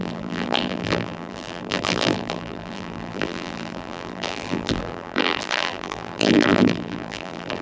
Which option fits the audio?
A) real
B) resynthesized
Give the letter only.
B